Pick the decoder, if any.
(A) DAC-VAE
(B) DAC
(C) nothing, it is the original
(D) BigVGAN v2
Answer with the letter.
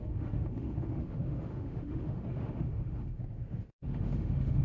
A